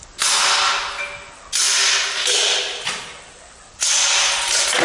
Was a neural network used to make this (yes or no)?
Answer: no